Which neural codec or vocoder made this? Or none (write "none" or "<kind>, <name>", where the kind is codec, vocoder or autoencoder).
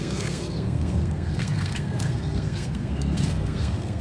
codec, SNAC